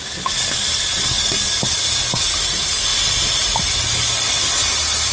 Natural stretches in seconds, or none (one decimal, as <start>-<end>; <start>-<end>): 0.0-5.1